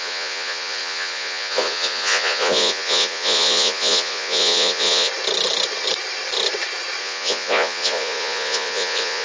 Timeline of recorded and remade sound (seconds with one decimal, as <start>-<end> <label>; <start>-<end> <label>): 0.0-5.1 remade; 5.1-7.0 recorded; 7.0-9.2 remade